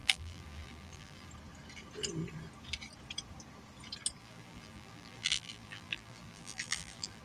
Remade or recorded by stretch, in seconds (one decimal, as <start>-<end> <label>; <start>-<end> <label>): 0.0-1.3 remade; 1.3-4.2 recorded; 4.2-7.2 remade